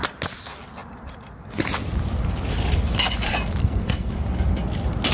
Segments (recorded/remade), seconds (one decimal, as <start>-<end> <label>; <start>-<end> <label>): 0.0-3.6 recorded; 3.6-4.1 remade; 4.1-5.1 recorded